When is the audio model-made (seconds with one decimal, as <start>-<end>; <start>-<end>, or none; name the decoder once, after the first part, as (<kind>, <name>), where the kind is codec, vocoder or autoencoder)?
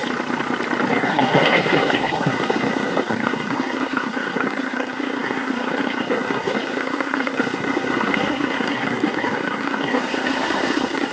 0.9-11.1 (codec, SNAC)